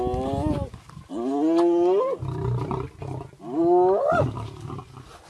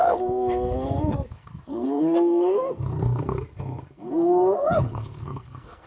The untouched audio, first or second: first